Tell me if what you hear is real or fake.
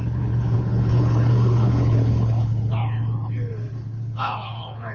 fake